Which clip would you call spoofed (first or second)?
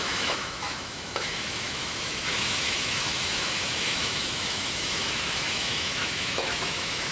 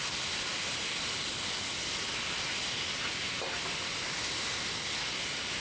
first